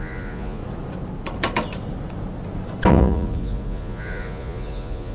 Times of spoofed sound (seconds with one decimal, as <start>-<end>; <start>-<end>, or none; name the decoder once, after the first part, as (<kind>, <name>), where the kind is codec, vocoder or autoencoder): 0.0-0.6 (vocoder, Vocos); 2.9-5.1